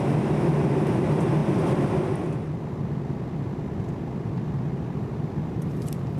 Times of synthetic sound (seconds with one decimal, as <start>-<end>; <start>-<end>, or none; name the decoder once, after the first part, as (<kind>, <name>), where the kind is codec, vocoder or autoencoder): none